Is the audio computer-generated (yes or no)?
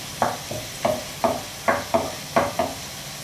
no